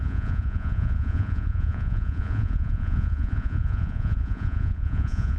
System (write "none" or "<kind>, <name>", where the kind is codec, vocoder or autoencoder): vocoder, Vocos